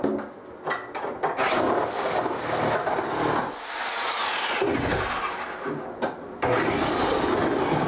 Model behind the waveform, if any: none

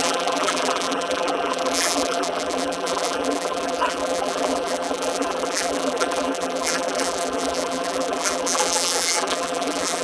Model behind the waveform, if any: vocoder, BigVGAN v2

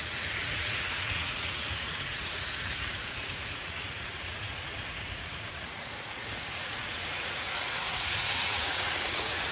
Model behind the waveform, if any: vocoder, Vocos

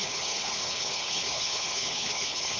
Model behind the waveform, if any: codec, HILCodec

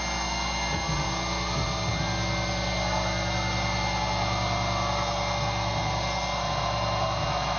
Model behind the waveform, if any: none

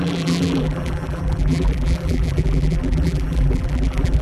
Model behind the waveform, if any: vocoder, BigVGAN v2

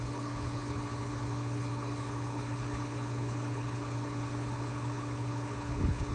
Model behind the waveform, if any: codec, HILCodec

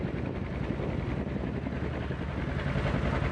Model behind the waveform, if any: none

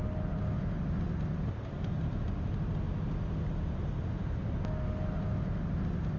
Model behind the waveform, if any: none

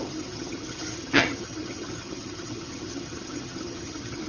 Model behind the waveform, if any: vocoder, HiFi-GAN